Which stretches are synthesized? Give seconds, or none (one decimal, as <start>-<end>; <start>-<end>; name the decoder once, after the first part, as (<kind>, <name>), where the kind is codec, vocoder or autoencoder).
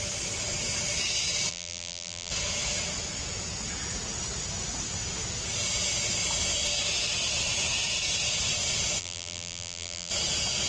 1.5-2.3 (vocoder, BigVGAN v2); 9.0-10.1